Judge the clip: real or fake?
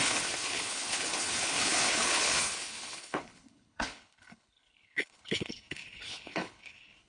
fake